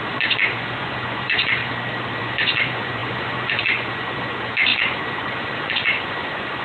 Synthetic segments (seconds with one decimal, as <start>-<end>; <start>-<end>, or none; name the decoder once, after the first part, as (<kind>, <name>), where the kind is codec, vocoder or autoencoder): 0.0-1.6 (vocoder, Vocos); 2.2-6.6